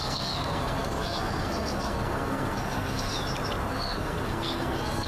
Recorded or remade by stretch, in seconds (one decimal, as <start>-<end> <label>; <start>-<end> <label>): 0.0-3.1 remade; 3.1-3.7 recorded; 3.7-5.1 remade